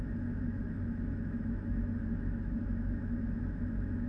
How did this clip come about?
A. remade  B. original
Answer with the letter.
A